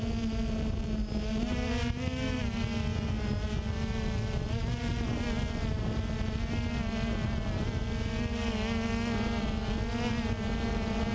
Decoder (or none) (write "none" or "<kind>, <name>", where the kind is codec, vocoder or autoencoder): none